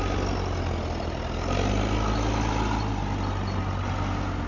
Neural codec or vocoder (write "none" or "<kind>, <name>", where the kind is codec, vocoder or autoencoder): none